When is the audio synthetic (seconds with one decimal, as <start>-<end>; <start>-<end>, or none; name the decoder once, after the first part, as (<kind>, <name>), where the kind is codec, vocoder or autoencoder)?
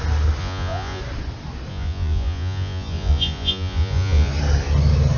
0.4-1.0 (vocoder, Vocos); 1.7-4.3